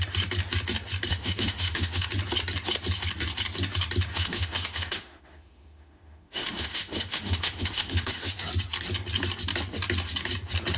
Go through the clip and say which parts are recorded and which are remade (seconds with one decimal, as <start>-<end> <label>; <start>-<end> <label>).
0.0-1.1 recorded; 1.1-2.1 remade; 2.1-4.1 recorded; 4.1-8.4 remade; 8.4-10.8 recorded